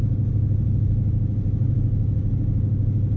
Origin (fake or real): real